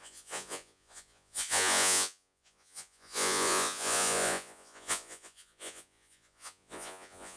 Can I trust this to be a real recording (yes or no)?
no